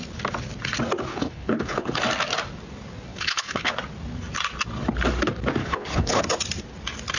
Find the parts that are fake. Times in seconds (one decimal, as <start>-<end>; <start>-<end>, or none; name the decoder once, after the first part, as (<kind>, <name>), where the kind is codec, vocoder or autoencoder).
1.1-2.0 (codec, HILCodec); 3.1-3.7; 5.6-6.2